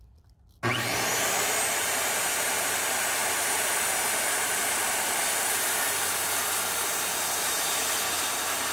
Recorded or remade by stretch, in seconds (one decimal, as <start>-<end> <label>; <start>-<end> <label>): 0.0-1.1 recorded; 1.1-2.8 remade; 2.8-3.2 recorded; 3.2-7.9 remade; 7.9-8.7 recorded